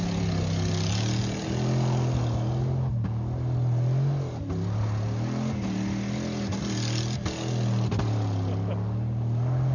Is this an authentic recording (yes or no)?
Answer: yes